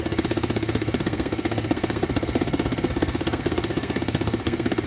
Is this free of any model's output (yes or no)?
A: no